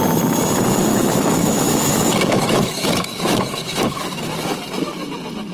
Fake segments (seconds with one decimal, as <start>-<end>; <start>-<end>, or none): 0.9-4.2